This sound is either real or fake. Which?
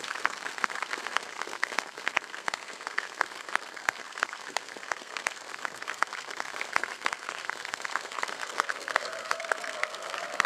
fake